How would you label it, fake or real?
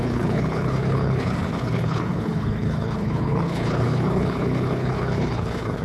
fake